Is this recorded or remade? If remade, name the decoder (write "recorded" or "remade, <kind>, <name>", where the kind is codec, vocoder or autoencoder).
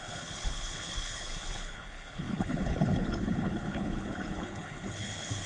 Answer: remade, codec, HILCodec